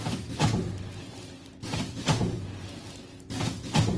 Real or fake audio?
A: real